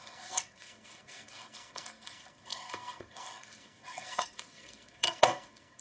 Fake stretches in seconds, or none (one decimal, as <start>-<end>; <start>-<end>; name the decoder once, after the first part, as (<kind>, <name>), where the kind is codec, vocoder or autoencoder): 0.0-5.8 (codec, SNAC)